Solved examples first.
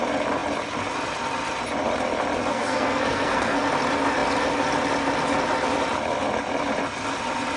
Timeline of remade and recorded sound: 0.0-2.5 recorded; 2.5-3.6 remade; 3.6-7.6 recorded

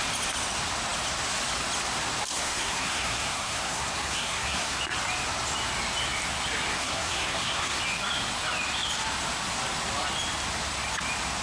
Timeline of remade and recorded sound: 0.0-2.3 recorded; 2.3-4.8 remade; 4.8-6.7 recorded; 6.7-7.8 remade; 7.8-11.4 recorded

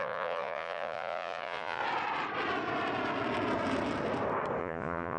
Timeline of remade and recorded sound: 0.0-1.8 remade; 1.8-4.6 recorded; 4.6-5.2 remade

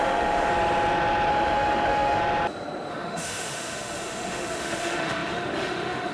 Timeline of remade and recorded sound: 0.0-0.5 remade; 0.5-1.3 recorded; 1.3-2.2 remade; 2.2-2.9 recorded; 2.9-6.1 remade

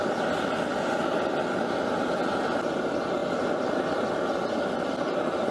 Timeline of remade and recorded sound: 0.0-5.5 recorded